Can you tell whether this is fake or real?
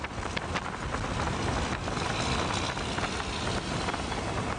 real